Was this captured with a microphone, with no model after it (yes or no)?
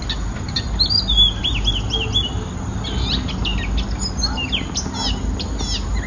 yes